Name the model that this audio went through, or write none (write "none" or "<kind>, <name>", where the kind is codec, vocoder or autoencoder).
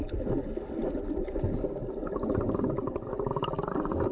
none